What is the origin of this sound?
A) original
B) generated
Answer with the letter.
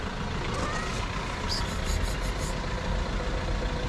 A